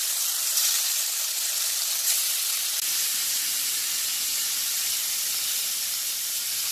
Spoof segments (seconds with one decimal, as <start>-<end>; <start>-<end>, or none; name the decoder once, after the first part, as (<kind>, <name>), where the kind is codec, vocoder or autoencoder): none

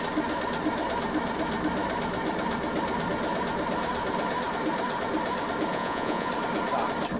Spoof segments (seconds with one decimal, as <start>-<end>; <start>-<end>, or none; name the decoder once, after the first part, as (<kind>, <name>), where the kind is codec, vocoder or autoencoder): 5.7-6.3 (vocoder, Vocos)

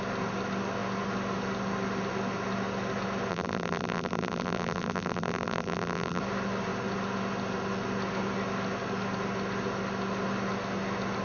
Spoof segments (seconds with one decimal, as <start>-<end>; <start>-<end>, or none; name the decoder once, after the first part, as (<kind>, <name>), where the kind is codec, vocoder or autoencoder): 3.3-6.2 (vocoder, BigVGAN v2)

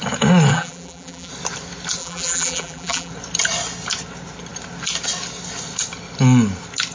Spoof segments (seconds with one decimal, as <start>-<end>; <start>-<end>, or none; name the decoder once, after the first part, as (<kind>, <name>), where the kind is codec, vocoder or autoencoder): 0.5-1.3 (vocoder, BigVGAN v2); 2.0-3.1

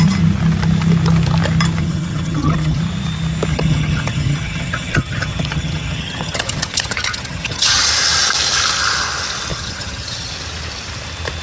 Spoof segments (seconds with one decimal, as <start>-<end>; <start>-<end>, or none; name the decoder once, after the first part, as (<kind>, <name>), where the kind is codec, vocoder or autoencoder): 1.8-2.8 (vocoder, HiFi-GAN); 3.5-7.8; 9.5-10.3

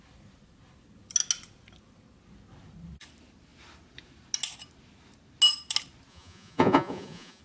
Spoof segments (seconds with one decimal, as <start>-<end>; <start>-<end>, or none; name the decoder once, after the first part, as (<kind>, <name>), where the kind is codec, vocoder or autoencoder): 6.1-7.4 (vocoder, Vocos)